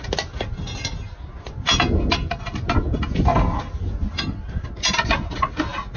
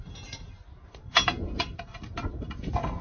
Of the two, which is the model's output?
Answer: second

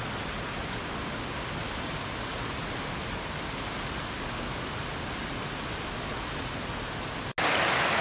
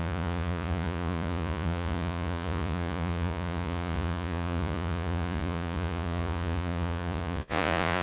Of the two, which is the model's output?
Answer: second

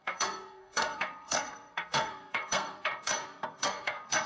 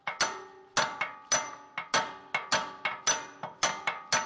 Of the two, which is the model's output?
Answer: first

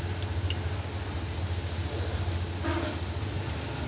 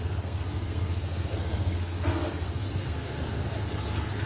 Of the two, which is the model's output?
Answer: second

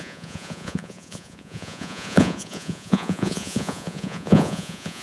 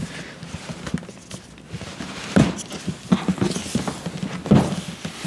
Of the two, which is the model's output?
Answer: first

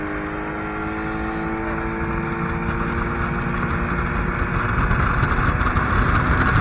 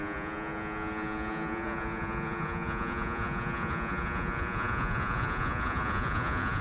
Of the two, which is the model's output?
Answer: second